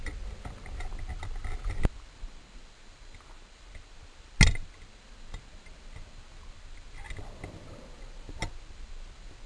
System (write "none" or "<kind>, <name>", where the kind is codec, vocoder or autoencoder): none